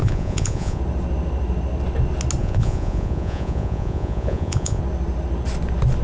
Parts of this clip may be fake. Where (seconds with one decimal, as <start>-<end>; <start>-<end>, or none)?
0.0-0.8; 2.4-4.8